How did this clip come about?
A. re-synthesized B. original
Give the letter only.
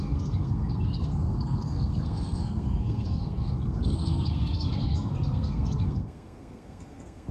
A